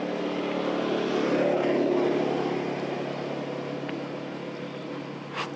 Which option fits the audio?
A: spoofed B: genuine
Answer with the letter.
B